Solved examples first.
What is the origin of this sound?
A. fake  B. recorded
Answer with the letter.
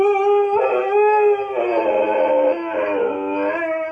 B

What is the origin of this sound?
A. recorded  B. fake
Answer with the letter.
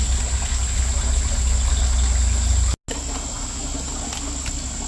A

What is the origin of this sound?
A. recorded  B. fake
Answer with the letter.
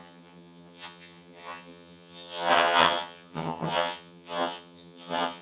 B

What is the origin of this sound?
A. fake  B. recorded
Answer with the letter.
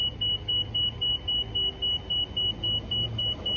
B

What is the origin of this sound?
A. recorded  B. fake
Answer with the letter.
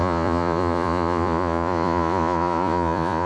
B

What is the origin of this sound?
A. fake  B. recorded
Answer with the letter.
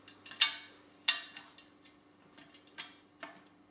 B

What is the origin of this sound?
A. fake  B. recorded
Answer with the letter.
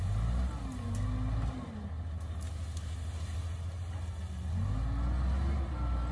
B